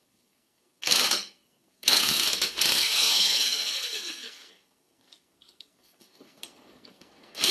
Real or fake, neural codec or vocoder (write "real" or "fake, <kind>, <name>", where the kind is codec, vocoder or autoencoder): fake, codec, SNAC